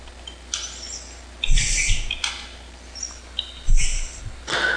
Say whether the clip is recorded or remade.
recorded